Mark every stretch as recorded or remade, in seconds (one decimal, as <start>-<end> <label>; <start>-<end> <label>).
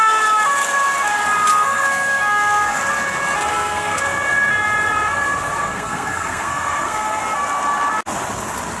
0.0-1.5 recorded; 1.5-2.8 remade; 2.8-3.5 recorded; 3.5-4.0 remade; 4.0-5.6 recorded; 5.6-7.2 remade; 7.2-8.8 recorded